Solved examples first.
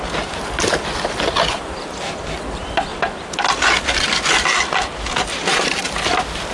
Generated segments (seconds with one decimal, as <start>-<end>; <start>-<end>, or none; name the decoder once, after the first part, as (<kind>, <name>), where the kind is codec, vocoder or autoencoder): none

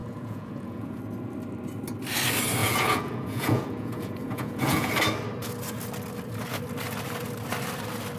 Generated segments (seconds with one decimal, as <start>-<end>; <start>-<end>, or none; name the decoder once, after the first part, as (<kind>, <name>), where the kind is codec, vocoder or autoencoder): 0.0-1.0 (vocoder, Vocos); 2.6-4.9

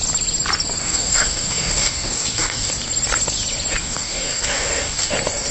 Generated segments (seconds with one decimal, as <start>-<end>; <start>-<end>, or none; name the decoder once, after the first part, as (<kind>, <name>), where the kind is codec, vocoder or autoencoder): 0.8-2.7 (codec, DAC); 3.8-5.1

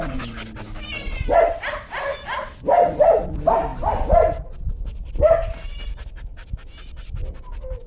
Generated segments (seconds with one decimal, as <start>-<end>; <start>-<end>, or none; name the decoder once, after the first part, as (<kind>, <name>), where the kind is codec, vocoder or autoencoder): none